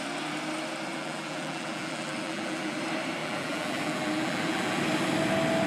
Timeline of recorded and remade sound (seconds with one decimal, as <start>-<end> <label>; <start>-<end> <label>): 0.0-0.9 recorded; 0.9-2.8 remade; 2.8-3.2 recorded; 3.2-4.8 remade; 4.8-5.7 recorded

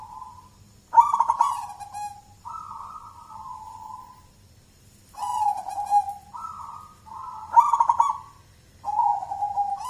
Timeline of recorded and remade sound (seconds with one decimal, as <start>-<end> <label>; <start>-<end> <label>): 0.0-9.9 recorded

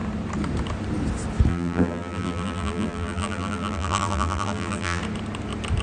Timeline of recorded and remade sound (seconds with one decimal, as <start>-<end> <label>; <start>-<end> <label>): 0.0-1.5 recorded; 1.5-5.0 remade; 5.0-5.8 recorded

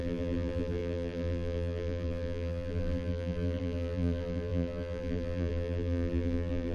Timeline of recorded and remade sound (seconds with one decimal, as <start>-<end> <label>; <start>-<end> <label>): 0.0-6.7 remade